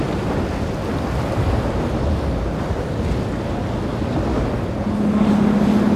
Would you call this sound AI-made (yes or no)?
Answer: no